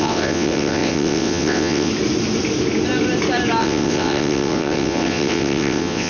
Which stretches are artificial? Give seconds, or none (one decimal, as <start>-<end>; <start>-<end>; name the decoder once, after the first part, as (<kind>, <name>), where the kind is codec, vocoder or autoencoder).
0.0-1.9 (vocoder, WaveNeXt); 3.6-6.1